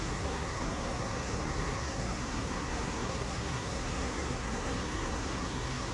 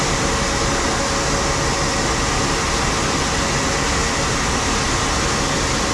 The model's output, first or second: first